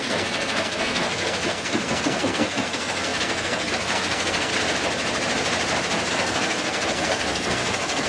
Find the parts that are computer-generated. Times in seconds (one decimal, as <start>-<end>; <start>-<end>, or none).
0.0-4.5; 6.1-8.1